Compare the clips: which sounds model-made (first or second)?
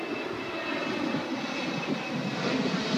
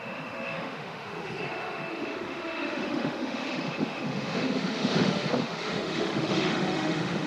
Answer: second